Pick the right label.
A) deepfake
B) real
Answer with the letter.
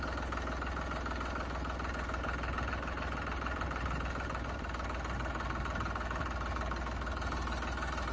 B